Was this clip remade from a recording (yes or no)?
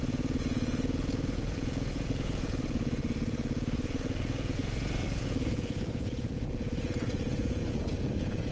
yes